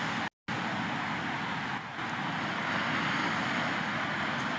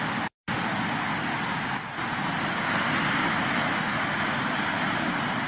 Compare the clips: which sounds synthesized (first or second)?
second